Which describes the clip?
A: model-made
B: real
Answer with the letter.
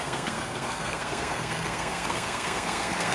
A